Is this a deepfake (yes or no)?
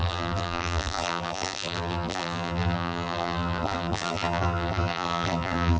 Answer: yes